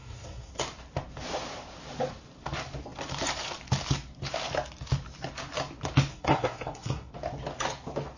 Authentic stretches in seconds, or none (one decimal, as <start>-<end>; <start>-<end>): 0.5-6.1; 7.1-8.2